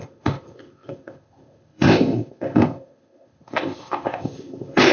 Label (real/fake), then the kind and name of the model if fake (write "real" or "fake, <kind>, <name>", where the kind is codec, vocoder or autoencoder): fake, codec, ZipCodec